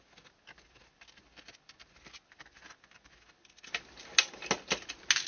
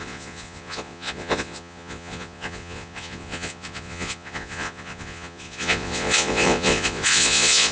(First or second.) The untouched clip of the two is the first